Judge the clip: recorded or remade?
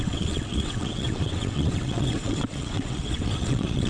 remade